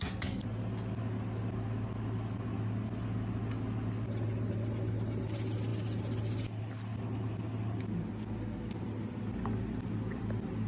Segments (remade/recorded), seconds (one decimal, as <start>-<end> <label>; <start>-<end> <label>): 0.0-10.7 recorded